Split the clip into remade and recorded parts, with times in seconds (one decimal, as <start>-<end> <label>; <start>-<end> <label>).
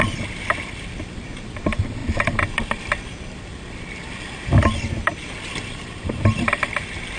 0.0-2.0 remade; 2.0-2.5 recorded; 2.5-4.5 remade; 4.5-5.3 recorded; 5.3-7.2 remade